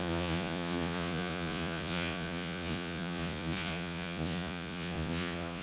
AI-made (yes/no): yes